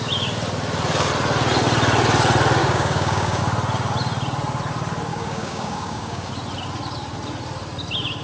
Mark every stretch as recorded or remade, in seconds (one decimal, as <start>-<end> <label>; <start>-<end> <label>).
0.0-2.6 recorded; 2.6-3.4 remade; 3.4-5.1 recorded; 5.1-6.3 remade; 6.3-8.2 recorded